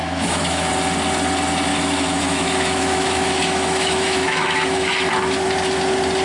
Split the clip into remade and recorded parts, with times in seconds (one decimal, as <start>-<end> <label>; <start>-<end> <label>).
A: 0.0-0.7 remade; 0.7-1.7 recorded; 1.7-5.1 remade; 5.1-6.2 recorded

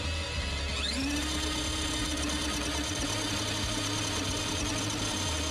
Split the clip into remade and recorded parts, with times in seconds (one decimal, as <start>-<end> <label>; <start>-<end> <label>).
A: 0.0-5.5 recorded

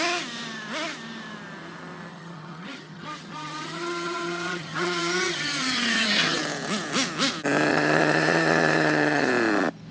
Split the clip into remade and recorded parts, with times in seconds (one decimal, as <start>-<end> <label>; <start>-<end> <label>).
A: 0.0-2.1 recorded; 2.1-6.4 remade; 6.4-7.7 recorded; 7.7-9.3 remade; 9.3-9.9 recorded

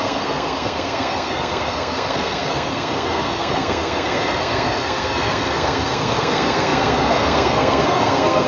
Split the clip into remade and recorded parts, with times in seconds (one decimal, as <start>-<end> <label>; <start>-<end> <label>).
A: 0.0-8.5 remade

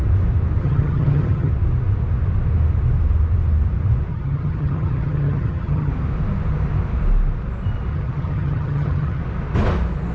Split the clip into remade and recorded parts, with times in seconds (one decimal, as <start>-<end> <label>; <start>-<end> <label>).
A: 0.0-0.6 recorded; 0.6-1.5 remade; 1.5-4.1 recorded; 4.1-5.9 remade; 5.9-7.9 recorded; 7.9-9.2 remade; 9.2-10.1 recorded